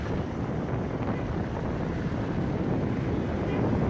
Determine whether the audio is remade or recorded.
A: recorded